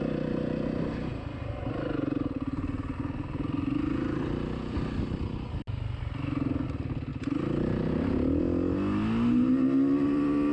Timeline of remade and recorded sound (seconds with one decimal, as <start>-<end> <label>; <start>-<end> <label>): 0.0-10.5 recorded